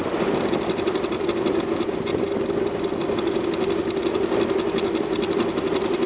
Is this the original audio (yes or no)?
yes